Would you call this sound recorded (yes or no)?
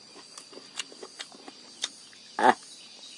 yes